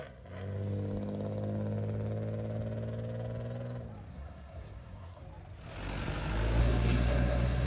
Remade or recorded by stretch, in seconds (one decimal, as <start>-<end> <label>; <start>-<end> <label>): 0.0-4.1 recorded; 4.1-5.2 remade; 5.2-6.6 recorded; 6.6-7.7 remade